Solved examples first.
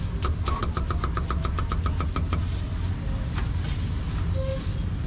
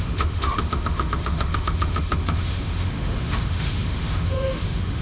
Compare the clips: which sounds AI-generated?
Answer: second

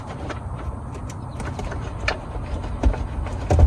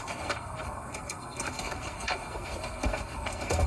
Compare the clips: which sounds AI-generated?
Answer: second